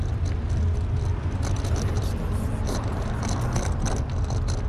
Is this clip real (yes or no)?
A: yes